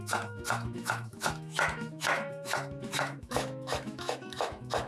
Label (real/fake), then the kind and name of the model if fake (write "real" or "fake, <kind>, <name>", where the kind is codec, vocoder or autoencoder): fake, autoencoder, DAC-VAE